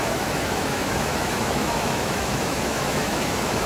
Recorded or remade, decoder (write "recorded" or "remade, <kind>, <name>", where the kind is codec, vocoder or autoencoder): remade, autoencoder, DAC-VAE